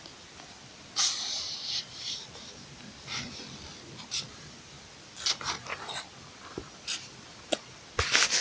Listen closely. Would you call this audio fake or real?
real